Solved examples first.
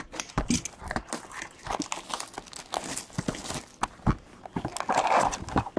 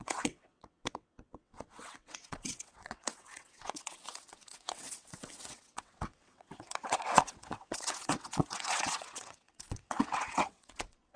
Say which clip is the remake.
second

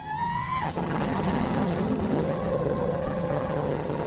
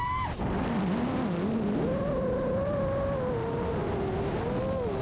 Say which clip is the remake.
first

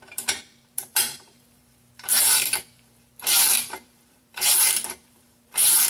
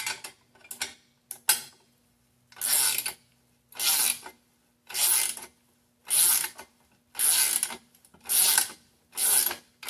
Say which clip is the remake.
first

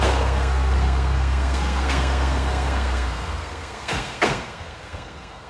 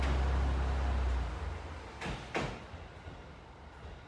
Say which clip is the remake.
first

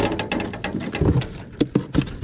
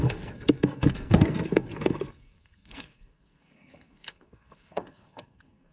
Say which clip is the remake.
second